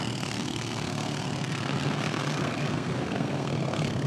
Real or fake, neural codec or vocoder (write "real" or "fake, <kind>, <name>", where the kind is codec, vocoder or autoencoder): fake, codec, SNAC